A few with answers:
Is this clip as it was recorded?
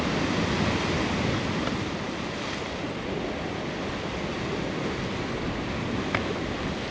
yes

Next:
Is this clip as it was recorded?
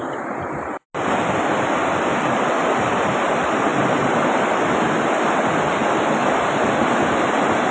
yes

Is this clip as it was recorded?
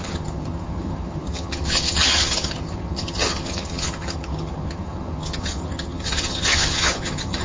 no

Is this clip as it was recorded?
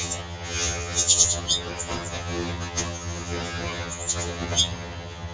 no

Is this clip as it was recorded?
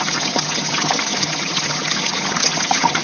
no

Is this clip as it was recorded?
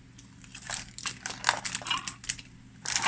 yes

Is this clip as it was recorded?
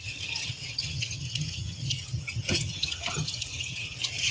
no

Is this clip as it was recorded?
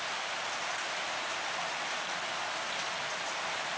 yes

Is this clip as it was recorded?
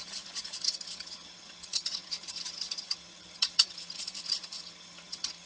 no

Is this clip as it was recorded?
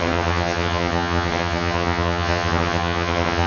no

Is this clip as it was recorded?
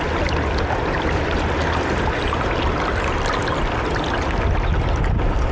yes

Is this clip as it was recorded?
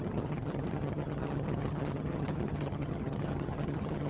no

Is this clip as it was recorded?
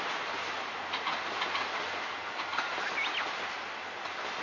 yes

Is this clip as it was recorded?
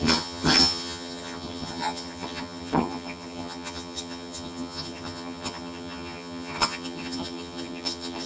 no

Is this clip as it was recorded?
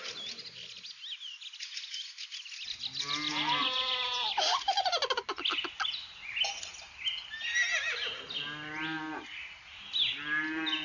yes